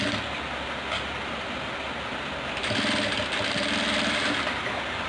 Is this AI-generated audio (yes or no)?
no